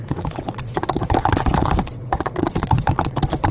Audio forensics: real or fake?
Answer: fake